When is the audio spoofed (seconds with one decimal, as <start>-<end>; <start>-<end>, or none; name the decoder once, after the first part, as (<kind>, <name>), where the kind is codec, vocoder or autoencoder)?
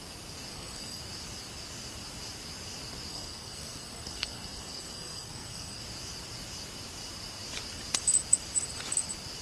0.5-1.0 (codec, SNAC); 3.1-5.8